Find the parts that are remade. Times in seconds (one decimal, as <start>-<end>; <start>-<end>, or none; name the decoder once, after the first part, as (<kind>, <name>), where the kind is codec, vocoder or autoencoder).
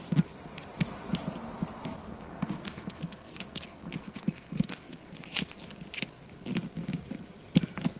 2.1-5.6 (codec, SNAC)